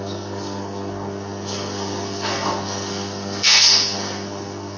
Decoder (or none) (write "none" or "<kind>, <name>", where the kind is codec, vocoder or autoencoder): codec, SNAC